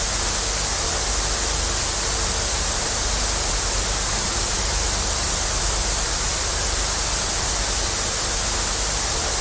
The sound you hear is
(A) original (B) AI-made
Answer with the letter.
A